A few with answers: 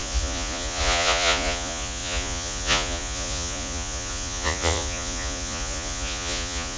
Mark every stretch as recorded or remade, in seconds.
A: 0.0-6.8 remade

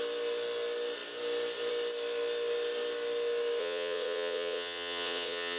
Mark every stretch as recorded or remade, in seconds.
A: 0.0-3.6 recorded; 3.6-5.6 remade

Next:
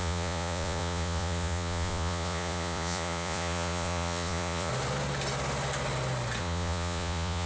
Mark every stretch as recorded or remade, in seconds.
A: 0.0-4.7 remade; 4.7-6.4 recorded; 6.4-7.5 remade

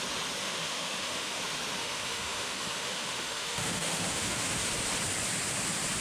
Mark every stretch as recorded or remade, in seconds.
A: 0.0-0.4 recorded; 0.4-1.4 remade; 1.4-1.8 recorded; 1.8-4.6 remade; 4.6-6.0 recorded